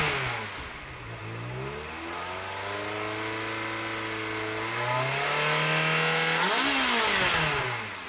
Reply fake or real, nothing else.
real